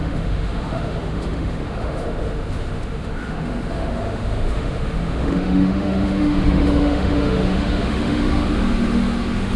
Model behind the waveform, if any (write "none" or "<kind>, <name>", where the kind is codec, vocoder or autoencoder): autoencoder, DAC-VAE